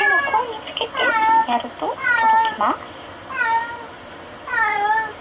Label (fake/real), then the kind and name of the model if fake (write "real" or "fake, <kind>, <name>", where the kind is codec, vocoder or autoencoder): fake, vocoder, BigVGAN v2